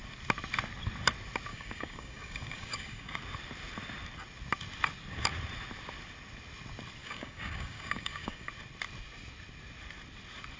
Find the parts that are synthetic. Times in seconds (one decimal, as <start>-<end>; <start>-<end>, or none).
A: 1.5-3.2; 7.0-8.5